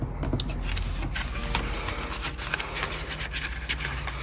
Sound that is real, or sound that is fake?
real